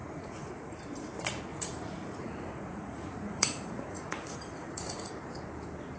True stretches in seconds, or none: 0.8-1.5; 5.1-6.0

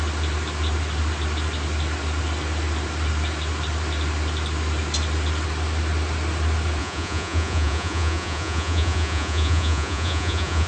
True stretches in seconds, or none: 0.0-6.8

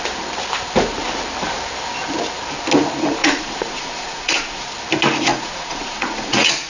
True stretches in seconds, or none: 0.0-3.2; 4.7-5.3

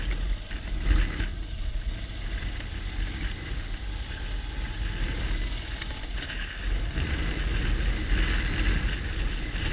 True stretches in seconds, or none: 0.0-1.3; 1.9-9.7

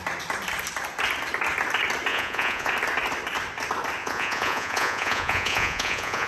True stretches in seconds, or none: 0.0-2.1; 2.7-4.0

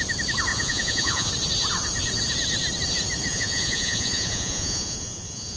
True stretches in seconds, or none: 0.0-0.5; 1.3-3.3

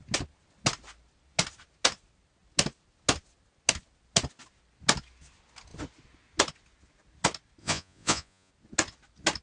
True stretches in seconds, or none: 0.0-7.6; 8.5-9.4

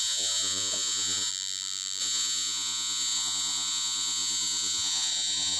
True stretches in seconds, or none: 1.3-2.0